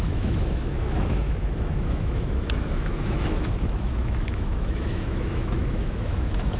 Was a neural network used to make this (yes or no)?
yes